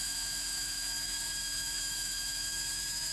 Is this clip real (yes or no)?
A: no